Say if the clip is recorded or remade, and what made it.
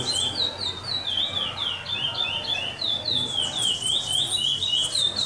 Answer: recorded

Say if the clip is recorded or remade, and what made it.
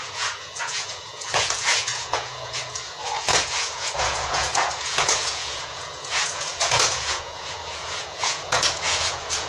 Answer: remade, vocoder, Vocos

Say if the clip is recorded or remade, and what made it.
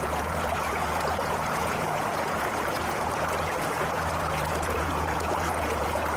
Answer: remade, vocoder, Vocos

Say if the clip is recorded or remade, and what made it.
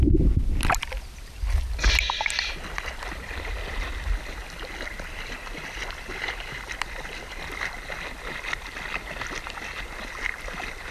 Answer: recorded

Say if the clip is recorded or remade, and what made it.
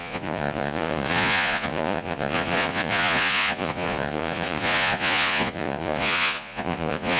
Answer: remade, vocoder, Vocos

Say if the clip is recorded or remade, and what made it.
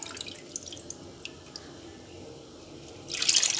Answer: recorded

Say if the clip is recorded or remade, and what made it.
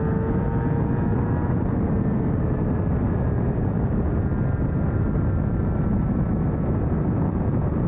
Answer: recorded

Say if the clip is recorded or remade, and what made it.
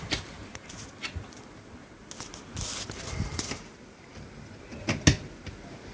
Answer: recorded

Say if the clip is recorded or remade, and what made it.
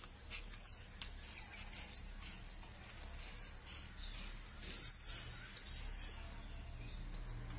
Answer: recorded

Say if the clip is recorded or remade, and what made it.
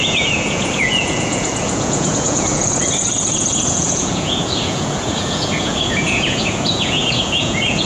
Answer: remade, vocoder, Vocos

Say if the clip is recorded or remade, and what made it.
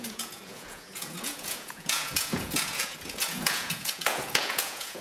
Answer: remade, vocoder, Vocos